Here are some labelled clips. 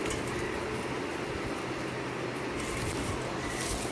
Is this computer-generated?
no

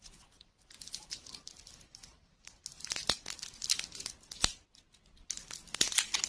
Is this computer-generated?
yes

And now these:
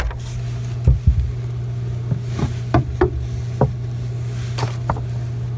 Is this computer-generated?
no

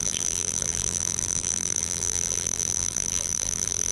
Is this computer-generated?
yes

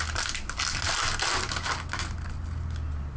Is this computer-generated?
no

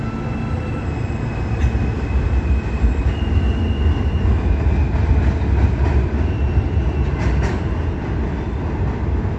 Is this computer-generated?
no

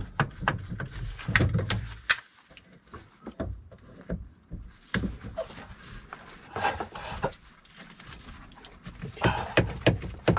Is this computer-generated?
yes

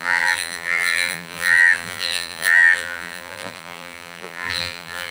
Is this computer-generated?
yes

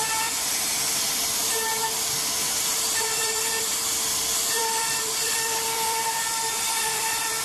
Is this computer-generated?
yes